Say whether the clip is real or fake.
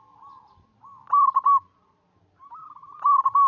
real